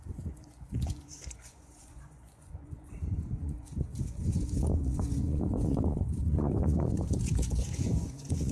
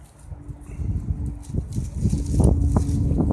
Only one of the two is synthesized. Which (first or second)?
first